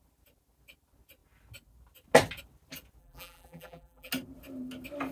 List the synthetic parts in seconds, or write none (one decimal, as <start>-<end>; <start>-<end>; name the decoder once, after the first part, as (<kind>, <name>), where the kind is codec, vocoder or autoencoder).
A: 3.0-4.1 (vocoder, BigVGAN v2)

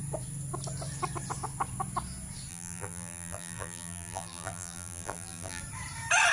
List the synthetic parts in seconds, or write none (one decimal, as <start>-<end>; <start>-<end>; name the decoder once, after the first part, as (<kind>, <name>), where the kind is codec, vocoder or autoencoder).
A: 2.5-5.6 (vocoder, BigVGAN v2)

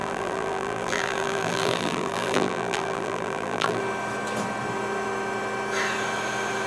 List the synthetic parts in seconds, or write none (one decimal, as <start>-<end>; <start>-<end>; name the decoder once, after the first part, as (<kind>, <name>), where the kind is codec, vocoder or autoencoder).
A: 0.0-3.8 (vocoder, BigVGAN v2)